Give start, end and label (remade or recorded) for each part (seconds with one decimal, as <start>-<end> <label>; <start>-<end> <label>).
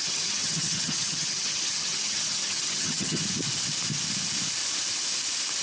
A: 0.0-3.2 remade; 3.2-5.6 recorded